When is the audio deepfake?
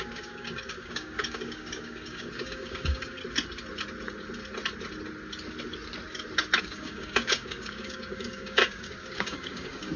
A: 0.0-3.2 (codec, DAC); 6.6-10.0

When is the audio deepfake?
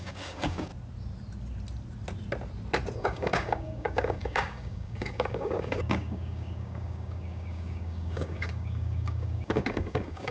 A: 0.0-0.7 (codec, DAC); 3.0-10.3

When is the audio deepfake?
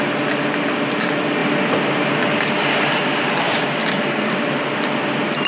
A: 3.8-4.4 (codec, DAC)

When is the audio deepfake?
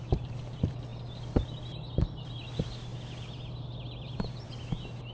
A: none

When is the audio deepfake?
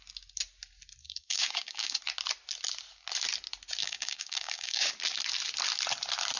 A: 1.0-2.0 (codec, DAC); 3.8-4.9